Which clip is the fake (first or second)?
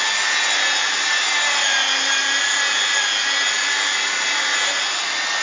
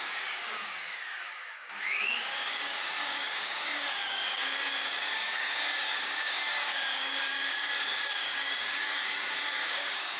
second